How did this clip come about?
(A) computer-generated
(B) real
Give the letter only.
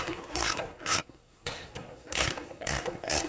A